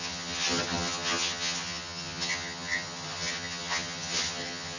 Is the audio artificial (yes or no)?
yes